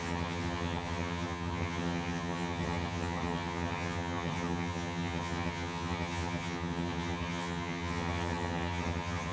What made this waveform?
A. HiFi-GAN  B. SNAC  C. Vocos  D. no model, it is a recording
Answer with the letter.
A